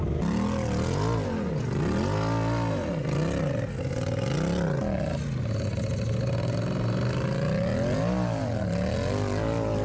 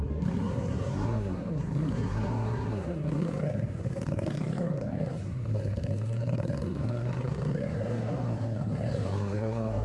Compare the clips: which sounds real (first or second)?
first